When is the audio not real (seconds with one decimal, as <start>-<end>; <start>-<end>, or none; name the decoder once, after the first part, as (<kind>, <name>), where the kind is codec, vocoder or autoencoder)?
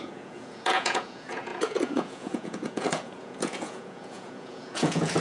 0.0-5.2 (vocoder, Vocos)